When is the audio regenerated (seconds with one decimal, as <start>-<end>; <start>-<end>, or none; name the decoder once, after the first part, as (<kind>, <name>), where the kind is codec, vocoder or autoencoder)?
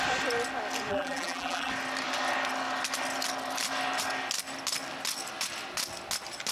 0.9-1.7 (vocoder, BigVGAN v2)